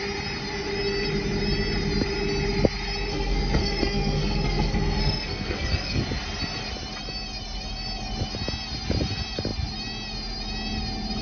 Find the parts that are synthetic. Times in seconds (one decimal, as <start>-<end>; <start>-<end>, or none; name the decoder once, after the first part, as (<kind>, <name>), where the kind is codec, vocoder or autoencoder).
3.1-6.0 (codec, SNAC)